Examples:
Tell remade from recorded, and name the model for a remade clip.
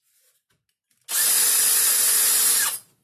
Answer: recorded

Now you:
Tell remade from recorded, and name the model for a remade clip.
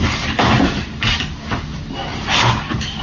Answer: recorded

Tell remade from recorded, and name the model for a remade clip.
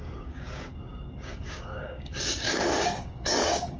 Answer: remade, codec, DAC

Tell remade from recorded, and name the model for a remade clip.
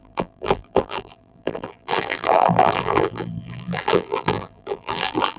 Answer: remade, vocoder, BigVGAN v2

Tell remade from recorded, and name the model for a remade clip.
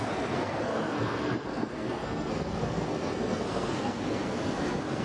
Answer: remade, codec, SNAC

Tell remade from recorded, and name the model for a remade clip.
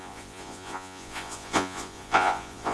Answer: remade, vocoder, Vocos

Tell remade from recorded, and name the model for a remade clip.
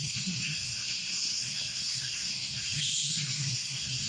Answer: remade, codec, SNAC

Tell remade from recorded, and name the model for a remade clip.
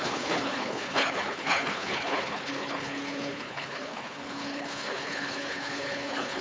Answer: remade, codec, HILCodec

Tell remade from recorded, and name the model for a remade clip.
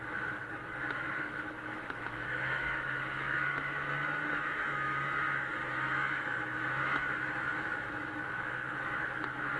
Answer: remade, autoencoder, DAC-VAE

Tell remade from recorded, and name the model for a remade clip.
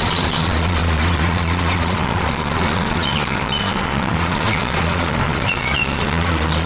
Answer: remade, vocoder, Vocos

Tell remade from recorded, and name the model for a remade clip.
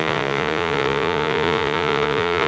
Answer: remade, vocoder, Vocos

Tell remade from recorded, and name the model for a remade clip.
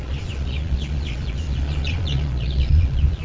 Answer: remade, vocoder, Vocos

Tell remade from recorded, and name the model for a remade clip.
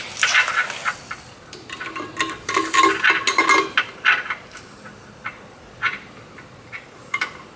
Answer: recorded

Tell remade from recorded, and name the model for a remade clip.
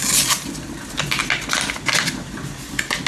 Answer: recorded